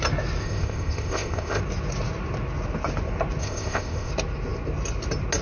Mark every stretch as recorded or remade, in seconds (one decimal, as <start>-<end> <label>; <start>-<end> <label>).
0.0-0.4 recorded; 0.4-1.6 remade; 1.6-3.4 recorded; 3.4-4.1 remade; 4.1-5.4 recorded